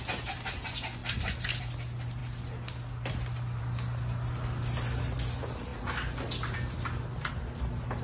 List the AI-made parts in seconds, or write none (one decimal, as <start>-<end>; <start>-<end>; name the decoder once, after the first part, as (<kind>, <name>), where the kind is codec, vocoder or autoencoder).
none